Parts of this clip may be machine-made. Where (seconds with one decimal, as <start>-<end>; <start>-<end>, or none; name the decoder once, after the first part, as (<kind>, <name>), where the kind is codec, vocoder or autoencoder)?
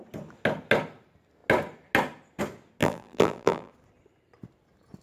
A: 2.8-3.7 (vocoder, BigVGAN v2)